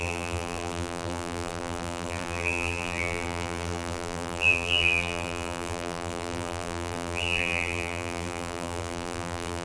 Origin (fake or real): fake